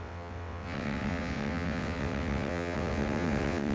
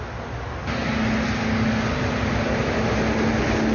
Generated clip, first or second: first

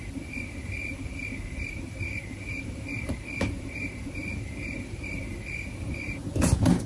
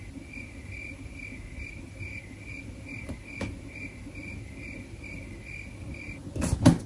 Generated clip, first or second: first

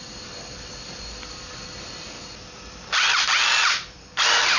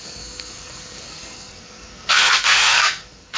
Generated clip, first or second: second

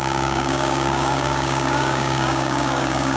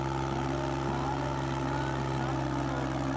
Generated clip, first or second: first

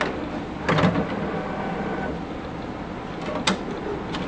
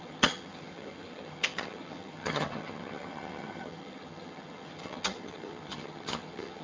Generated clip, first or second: second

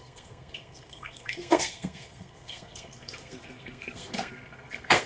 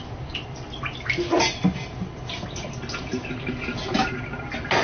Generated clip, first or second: first